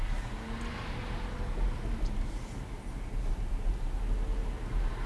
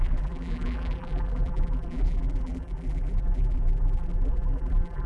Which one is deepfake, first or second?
second